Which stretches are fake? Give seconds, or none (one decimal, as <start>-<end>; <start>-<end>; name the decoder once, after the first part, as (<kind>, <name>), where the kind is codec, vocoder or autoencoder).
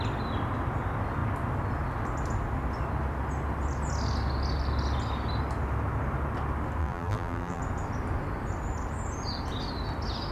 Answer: 6.8-7.6 (vocoder, BigVGAN v2)